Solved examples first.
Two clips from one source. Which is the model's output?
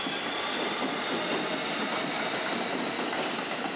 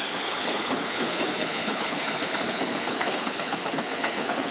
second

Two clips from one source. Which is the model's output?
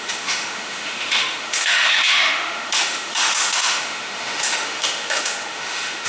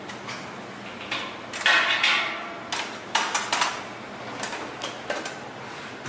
first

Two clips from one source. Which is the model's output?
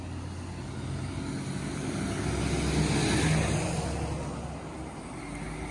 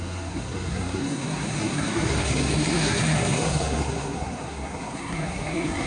second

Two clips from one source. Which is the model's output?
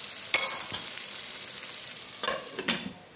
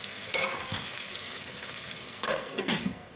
second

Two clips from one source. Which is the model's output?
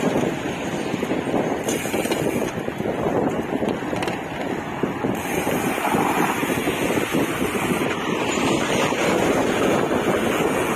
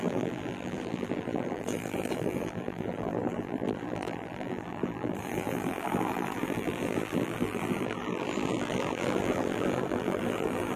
second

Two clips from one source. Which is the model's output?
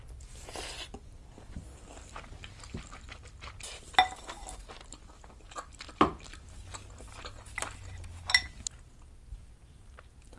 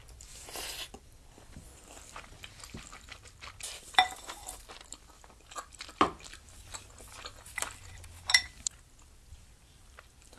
second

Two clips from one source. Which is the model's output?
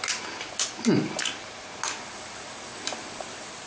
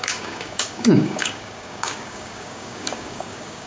second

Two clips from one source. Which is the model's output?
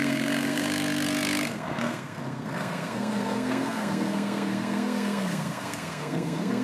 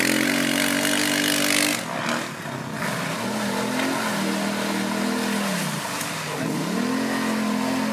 first